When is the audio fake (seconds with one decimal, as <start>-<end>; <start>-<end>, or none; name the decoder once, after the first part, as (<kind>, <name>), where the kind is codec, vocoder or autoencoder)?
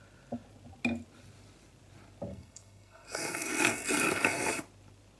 2.3-4.5 (codec, SNAC)